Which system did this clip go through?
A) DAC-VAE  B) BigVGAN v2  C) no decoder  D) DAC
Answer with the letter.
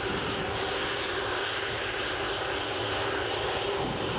C